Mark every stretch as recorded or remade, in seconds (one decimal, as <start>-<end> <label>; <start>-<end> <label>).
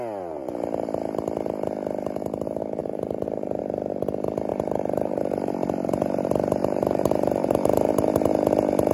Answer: 0.0-2.8 recorded; 2.8-3.6 remade; 3.6-4.5 recorded; 4.5-5.2 remade; 5.2-6.6 recorded; 6.6-7.9 remade; 7.9-8.9 recorded